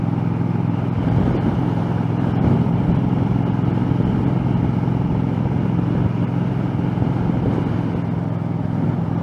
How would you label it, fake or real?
real